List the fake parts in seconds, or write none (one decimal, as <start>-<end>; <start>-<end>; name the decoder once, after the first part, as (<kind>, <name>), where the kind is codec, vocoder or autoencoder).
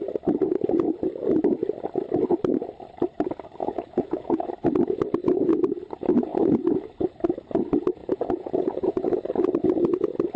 3.6-4.4 (vocoder, Vocos); 8.0-9.1